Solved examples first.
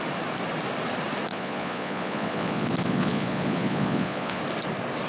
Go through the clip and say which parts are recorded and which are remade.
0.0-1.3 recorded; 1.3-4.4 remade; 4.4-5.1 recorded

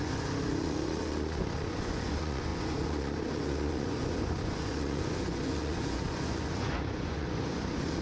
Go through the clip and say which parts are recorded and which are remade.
0.0-8.0 remade